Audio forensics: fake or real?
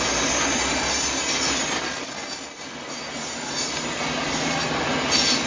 real